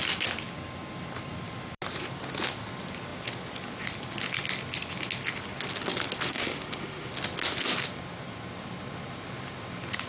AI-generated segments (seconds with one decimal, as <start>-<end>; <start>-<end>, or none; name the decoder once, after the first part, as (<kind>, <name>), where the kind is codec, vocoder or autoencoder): 6.3-7.1 (autoencoder, DAC-VAE)